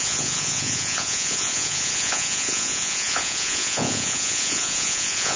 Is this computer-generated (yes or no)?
yes